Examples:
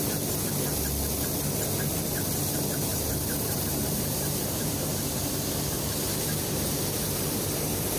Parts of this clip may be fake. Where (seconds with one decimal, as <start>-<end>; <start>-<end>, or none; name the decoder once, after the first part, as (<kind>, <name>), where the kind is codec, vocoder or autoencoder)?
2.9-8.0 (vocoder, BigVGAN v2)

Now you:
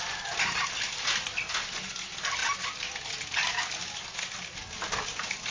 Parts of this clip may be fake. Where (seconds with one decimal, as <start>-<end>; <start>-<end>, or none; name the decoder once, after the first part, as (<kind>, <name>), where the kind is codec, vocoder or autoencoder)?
none

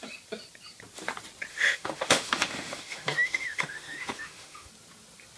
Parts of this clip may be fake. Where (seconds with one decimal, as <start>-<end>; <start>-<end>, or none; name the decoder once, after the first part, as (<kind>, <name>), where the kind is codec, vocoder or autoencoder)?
1.5-4.7 (autoencoder, DAC-VAE)

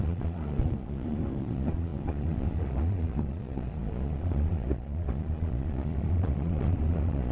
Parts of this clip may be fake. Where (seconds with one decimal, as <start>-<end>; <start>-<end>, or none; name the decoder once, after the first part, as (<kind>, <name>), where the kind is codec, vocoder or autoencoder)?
0.0-7.3 (vocoder, Vocos)

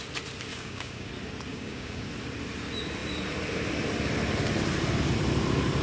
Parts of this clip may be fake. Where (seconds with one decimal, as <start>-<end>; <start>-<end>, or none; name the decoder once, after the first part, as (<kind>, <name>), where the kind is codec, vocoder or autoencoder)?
0.5-1.1 (codec, DAC); 1.5-2.1